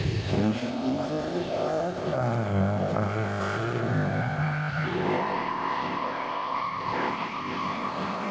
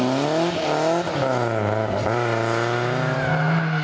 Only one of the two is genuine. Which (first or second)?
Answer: second